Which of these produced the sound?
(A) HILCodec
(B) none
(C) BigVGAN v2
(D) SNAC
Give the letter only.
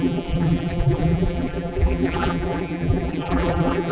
C